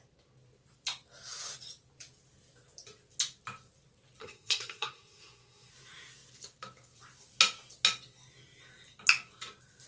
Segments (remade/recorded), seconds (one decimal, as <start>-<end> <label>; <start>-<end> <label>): 0.0-4.2 recorded; 4.2-5.7 remade; 5.7-9.9 recorded